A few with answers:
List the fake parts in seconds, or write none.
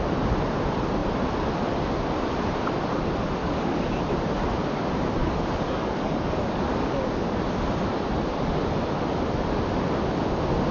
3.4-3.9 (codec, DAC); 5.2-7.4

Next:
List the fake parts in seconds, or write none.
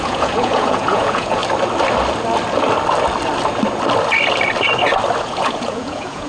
0.0-1.4 (vocoder, Vocos); 5.2-6.3